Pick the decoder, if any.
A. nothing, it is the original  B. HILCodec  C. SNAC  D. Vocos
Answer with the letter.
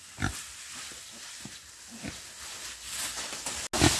A